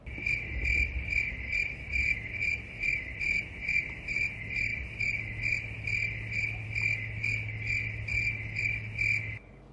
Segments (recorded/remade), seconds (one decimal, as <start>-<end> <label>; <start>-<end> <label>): 0.0-9.7 recorded